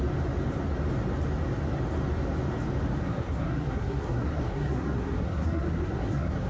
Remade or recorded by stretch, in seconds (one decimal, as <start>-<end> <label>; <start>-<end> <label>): 0.0-3.0 recorded; 3.0-6.5 remade

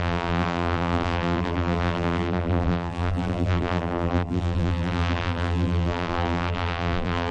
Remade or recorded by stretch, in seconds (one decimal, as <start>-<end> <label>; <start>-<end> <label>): 0.0-7.3 remade

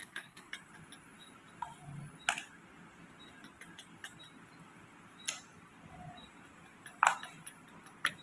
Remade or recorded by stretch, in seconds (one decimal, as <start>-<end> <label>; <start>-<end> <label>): 0.0-0.5 remade; 0.5-8.2 recorded